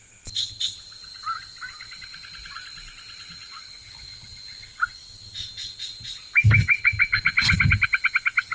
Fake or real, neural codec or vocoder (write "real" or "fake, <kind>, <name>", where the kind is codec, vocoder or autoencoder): real